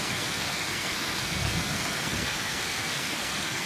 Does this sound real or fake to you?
fake